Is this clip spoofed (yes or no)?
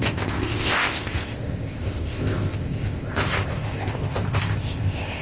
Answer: yes